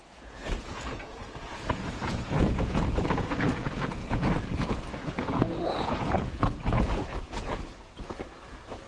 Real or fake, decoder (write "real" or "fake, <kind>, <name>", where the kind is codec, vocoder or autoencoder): fake, vocoder, Vocos